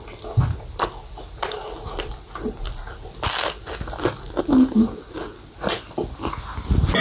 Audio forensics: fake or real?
real